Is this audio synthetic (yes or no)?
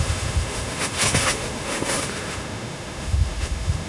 yes